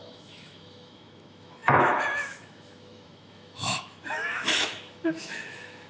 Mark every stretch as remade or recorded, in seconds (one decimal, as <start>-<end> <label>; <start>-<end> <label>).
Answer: 0.0-5.9 remade